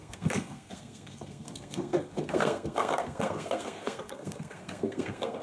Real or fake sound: fake